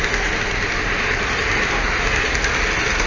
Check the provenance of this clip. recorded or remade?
recorded